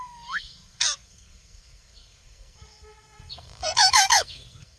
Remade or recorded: remade